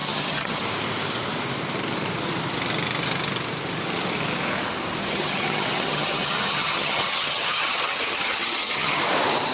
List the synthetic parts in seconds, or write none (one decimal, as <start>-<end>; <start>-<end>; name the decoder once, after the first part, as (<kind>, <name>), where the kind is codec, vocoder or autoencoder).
0.0-0.6 (vocoder, HiFi-GAN); 5.1-9.0